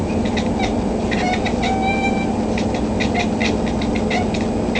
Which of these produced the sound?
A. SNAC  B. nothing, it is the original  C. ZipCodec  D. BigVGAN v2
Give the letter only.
B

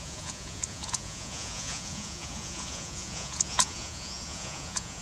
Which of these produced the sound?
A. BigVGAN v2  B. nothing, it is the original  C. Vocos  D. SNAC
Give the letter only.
C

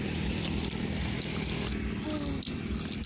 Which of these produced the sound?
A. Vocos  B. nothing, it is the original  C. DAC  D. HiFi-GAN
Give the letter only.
B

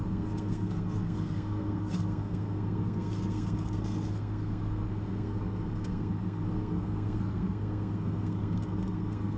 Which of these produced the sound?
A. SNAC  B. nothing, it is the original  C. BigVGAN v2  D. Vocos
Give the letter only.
A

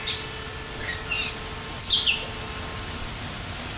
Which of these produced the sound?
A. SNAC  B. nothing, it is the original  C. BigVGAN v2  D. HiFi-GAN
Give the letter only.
B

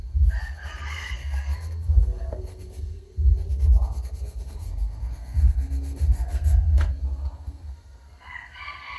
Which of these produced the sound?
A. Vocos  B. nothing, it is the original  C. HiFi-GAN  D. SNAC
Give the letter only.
D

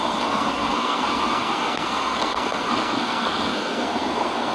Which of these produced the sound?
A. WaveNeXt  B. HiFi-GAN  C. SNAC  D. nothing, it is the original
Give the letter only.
C